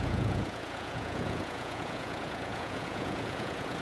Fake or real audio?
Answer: fake